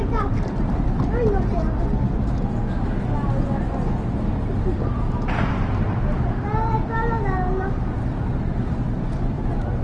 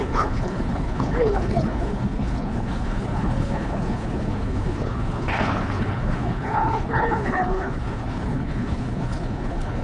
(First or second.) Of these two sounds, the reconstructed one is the second